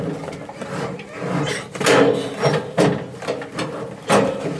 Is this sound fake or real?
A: real